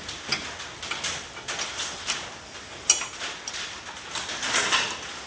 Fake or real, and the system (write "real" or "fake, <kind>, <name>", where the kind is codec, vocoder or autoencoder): real